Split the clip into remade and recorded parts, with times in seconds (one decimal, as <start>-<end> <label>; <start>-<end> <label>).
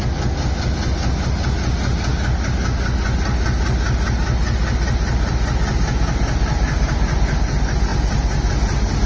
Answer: 0.0-9.1 recorded